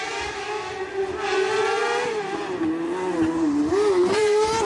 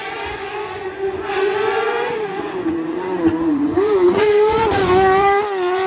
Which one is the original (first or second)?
first